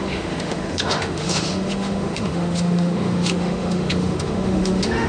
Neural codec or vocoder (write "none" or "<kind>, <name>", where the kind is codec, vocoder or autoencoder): autoencoder, DAC-VAE